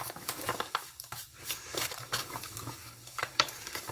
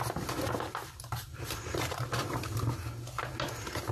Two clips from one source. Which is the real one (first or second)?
second